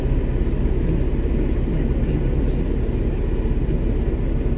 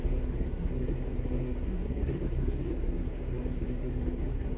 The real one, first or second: first